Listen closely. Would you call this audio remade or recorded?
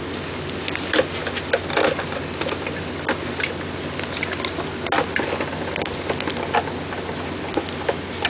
recorded